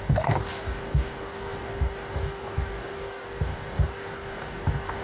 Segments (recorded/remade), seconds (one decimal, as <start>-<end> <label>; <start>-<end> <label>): 0.0-5.0 remade

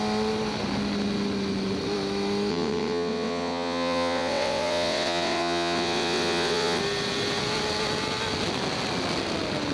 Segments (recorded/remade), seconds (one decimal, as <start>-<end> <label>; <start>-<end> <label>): 0.0-2.5 recorded; 2.5-6.8 remade; 6.8-9.7 recorded

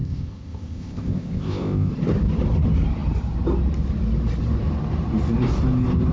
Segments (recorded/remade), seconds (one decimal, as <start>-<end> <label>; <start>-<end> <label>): 0.0-1.9 remade; 1.9-6.1 recorded

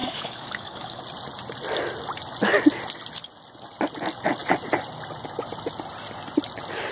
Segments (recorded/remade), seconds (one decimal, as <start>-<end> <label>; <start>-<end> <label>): 0.0-1.0 remade; 1.0-6.9 recorded

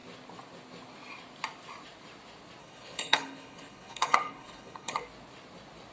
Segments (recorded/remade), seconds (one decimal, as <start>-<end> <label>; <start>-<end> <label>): 0.0-2.6 recorded; 2.6-5.0 remade; 5.0-5.9 recorded

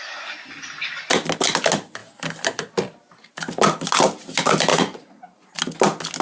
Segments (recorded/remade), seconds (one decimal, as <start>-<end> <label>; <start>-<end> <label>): 0.0-4.7 recorded; 4.7-5.5 remade; 5.5-6.2 recorded

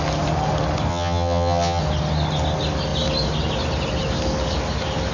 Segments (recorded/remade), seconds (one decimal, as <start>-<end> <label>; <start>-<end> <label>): 0.0-0.9 recorded; 0.9-1.8 remade; 1.8-5.1 recorded